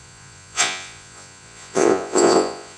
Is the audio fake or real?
fake